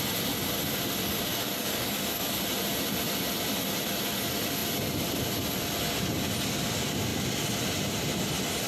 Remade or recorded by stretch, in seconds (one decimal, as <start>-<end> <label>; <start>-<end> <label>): 0.0-1.3 recorded; 1.3-2.3 remade; 2.3-8.7 recorded